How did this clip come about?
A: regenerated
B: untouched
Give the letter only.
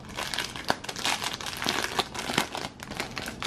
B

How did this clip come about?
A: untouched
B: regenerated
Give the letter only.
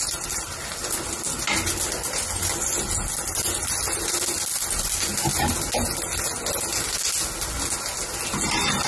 A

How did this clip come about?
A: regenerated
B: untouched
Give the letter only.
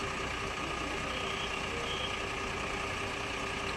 B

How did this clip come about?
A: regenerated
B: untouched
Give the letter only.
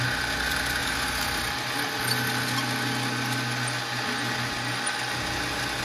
B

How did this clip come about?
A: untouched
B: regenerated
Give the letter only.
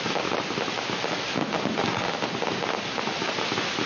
A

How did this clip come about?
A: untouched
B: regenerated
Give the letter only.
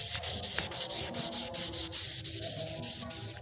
A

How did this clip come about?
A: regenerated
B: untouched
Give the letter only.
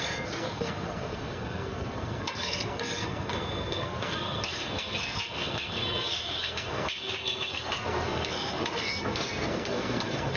A